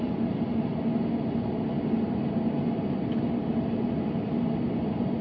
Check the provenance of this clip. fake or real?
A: real